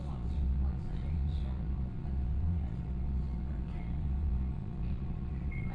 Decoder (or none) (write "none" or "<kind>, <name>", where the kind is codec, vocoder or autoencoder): vocoder, Vocos